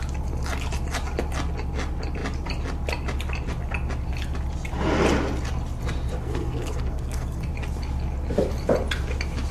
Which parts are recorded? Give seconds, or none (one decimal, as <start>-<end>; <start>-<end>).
0.0-6.2; 7.5-9.5